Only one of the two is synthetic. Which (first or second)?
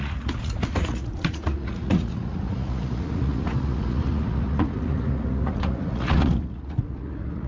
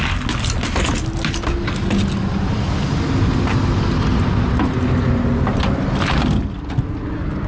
first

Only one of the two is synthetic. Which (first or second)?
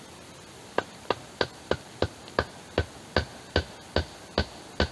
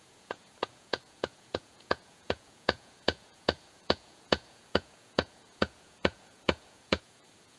second